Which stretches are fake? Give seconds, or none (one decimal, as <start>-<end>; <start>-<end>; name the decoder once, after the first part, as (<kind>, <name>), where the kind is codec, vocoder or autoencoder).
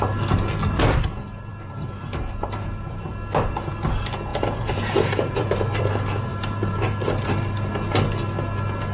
1.5-3.1 (vocoder, BigVGAN v2); 4.3-5.8; 6.3-7.7